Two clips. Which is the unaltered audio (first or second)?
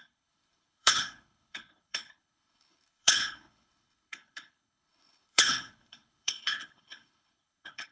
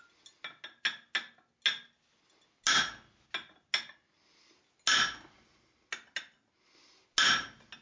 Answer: second